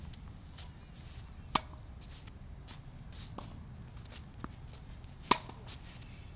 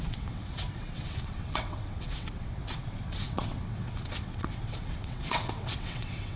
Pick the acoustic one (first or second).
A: first